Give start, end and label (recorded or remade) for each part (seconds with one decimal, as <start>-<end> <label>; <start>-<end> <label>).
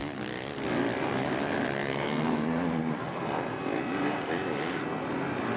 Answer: 0.0-5.6 recorded